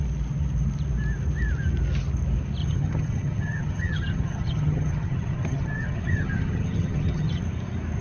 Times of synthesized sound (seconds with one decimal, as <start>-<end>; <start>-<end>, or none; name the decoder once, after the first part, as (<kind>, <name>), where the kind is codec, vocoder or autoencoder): 2.6-7.4 (vocoder, HiFi-GAN)